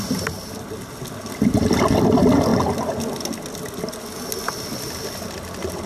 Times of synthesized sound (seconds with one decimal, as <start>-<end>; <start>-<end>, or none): none